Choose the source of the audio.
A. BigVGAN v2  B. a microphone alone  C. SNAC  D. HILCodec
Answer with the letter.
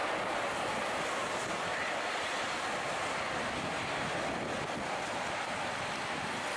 B